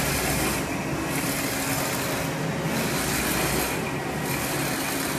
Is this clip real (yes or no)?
yes